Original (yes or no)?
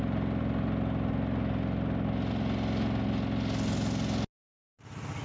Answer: yes